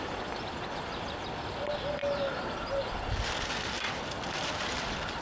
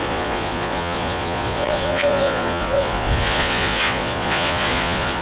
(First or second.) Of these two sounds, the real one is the first